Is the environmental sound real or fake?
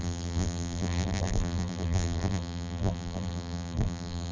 fake